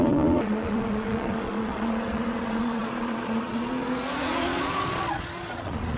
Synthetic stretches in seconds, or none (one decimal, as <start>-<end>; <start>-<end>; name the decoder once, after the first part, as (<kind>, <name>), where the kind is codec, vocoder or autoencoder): 0.0-6.0 (vocoder, Vocos)